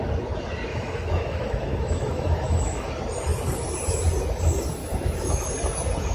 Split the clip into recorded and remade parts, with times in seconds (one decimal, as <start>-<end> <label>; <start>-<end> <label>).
0.0-0.7 recorded; 0.7-2.9 remade; 2.9-4.8 recorded; 4.8-5.5 remade; 5.5-6.1 recorded